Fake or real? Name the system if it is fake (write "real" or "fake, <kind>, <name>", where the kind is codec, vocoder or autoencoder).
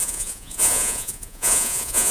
fake, vocoder, Vocos